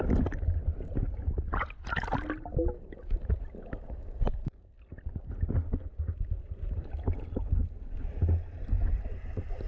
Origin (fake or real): real